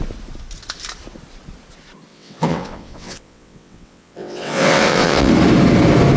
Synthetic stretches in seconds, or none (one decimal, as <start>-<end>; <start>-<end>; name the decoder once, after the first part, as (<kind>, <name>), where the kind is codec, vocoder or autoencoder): 2.1-5.3 (vocoder, WaveNeXt)